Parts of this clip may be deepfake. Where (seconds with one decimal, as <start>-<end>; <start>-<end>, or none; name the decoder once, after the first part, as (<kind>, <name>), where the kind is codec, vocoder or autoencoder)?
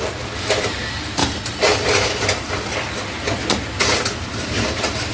0.0-1.2 (vocoder, BigVGAN v2); 4.3-5.1